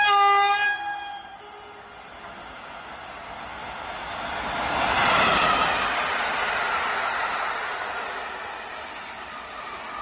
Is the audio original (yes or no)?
yes